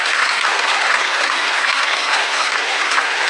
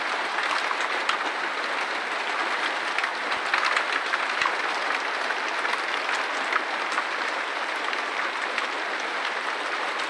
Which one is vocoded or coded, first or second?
first